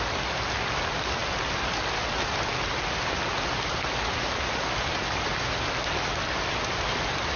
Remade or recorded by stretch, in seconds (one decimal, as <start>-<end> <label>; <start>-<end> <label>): 0.0-7.4 recorded